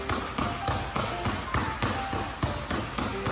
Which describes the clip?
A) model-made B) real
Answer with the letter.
B